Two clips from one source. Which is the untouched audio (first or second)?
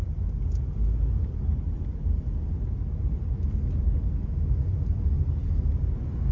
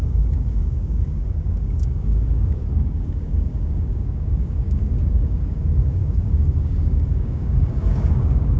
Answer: first